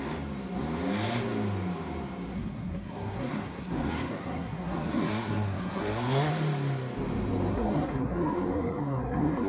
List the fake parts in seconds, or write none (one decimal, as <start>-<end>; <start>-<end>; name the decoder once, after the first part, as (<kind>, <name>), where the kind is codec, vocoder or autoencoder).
2.3-6.3 (codec, SNAC); 7.5-9.5